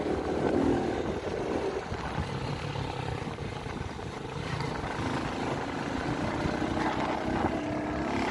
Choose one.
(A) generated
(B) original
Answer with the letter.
B